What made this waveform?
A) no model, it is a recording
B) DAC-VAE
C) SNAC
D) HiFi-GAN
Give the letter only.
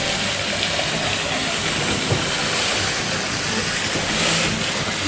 A